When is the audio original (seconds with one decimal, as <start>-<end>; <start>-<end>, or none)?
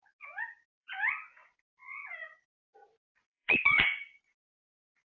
none